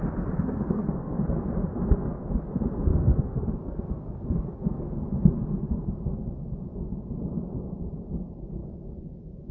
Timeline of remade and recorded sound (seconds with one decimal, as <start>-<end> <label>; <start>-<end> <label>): 0.0-0.7 recorded; 0.7-1.2 remade; 1.2-2.9 recorded; 2.9-4.9 remade; 4.9-9.5 recorded